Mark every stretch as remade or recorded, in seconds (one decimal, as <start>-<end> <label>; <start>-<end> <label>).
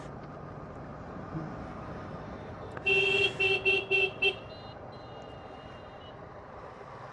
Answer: 0.0-0.9 recorded; 0.9-1.5 remade; 1.5-2.0 recorded; 2.0-6.3 remade; 6.3-7.1 recorded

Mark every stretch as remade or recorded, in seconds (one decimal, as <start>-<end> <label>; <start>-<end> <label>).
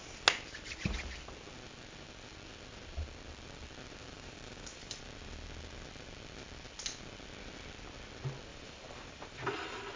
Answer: 0.0-4.0 recorded; 4.0-5.0 remade; 5.0-8.5 recorded; 8.5-9.5 remade; 9.5-10.0 recorded